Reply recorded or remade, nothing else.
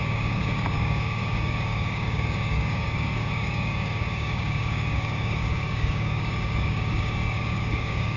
remade